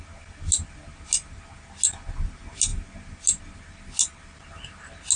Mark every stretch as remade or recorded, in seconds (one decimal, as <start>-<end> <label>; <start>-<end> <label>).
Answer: 0.0-5.2 recorded